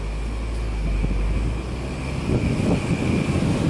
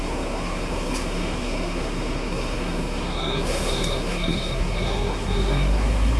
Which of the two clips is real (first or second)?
first